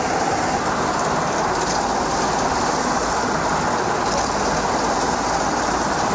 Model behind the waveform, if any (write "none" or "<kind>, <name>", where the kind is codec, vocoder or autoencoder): none